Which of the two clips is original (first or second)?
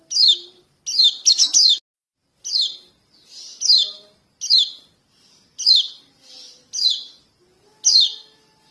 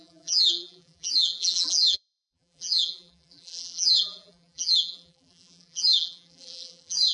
first